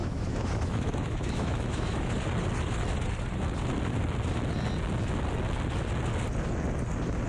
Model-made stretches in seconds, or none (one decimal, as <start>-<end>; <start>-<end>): 0.0-2.1